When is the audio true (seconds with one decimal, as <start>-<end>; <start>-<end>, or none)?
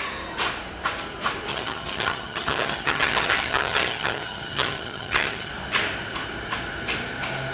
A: 0.0-1.5; 5.5-7.5